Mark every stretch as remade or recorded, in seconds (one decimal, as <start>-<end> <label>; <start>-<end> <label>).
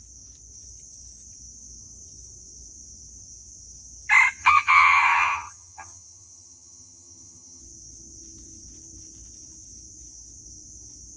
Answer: 0.0-4.4 recorded; 4.4-7.6 remade; 7.6-11.2 recorded